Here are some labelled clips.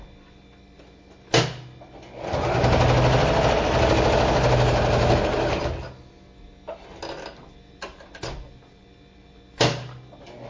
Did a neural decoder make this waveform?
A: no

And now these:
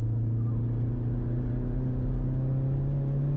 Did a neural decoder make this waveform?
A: no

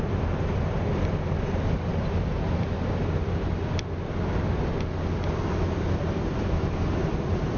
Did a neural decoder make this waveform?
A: no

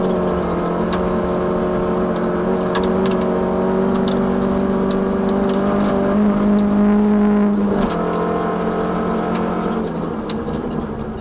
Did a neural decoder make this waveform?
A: no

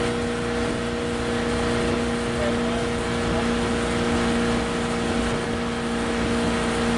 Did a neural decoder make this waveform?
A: no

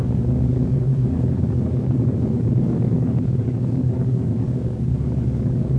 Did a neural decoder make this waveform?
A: yes